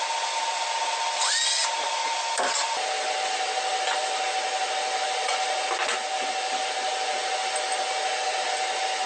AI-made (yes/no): no